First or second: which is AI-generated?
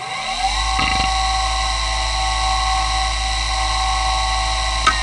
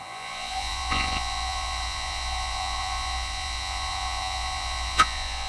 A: second